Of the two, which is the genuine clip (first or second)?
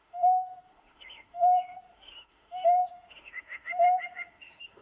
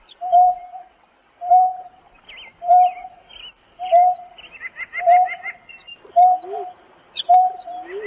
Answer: second